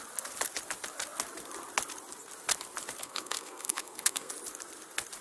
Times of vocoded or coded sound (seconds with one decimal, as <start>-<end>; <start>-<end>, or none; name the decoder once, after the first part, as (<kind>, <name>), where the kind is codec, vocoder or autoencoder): 3.0-4.3 (codec, SNAC)